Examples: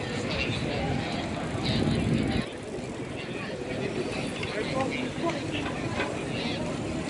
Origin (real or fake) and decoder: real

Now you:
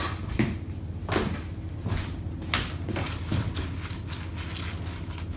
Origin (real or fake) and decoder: real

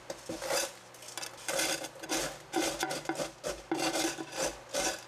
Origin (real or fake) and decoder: real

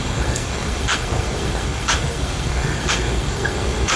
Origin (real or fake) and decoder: fake, codec, SNAC